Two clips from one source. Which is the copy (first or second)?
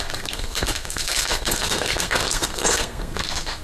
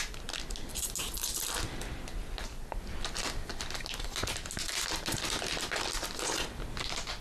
first